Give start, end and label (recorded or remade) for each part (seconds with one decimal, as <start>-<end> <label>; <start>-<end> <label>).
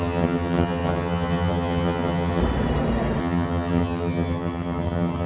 0.0-2.4 remade; 2.4-3.2 recorded; 3.2-5.3 remade